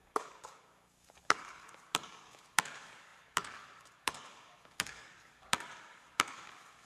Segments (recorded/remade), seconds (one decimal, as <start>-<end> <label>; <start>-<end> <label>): 0.0-6.9 remade